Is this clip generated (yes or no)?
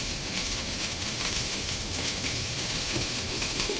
yes